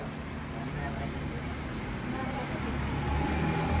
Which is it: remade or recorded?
recorded